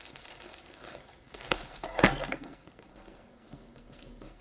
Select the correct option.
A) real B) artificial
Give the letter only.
B